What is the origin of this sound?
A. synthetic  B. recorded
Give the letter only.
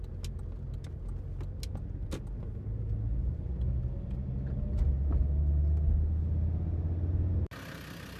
B